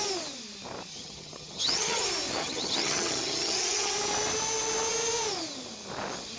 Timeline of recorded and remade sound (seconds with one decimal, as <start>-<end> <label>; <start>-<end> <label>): 0.0-0.9 recorded; 0.9-2.0 remade; 2.0-2.4 recorded; 2.4-3.9 remade; 3.9-6.4 recorded

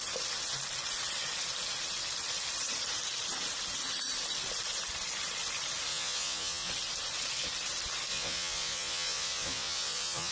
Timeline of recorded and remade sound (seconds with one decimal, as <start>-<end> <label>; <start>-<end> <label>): 0.0-5.9 recorded; 5.9-6.7 remade; 6.7-8.1 recorded; 8.1-10.3 remade

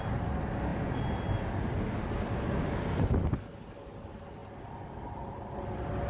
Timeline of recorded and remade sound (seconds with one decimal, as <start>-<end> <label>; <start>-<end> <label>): 0.0-6.1 recorded

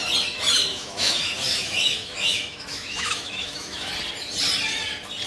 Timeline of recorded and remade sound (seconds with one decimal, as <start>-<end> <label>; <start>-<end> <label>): 0.0-0.7 recorded; 0.7-3.9 remade; 3.9-5.3 recorded

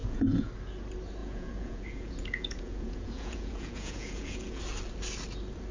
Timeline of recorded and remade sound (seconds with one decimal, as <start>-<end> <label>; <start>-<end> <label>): 0.0-0.5 remade; 0.5-1.2 recorded; 1.2-4.6 remade; 4.6-5.7 recorded

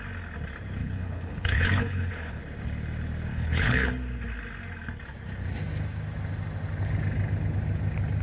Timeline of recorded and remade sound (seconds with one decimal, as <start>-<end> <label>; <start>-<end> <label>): 0.0-0.8 recorded; 0.8-2.4 remade; 2.4-3.3 recorded; 3.3-3.9 remade; 3.9-8.2 recorded